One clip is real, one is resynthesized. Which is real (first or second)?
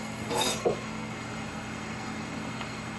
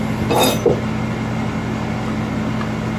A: second